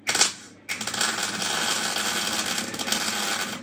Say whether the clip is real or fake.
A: real